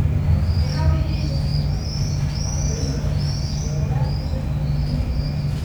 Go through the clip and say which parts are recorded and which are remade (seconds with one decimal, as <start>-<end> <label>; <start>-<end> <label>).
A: 0.0-5.6 recorded